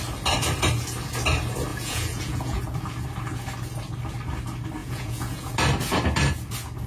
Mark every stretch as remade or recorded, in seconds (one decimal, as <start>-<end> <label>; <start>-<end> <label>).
0.0-1.7 recorded; 1.7-2.6 remade; 2.6-4.8 recorded; 4.8-5.5 remade; 5.5-6.9 recorded